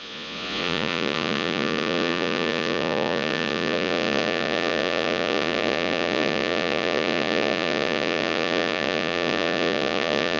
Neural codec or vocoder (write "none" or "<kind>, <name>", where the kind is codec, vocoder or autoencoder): vocoder, Vocos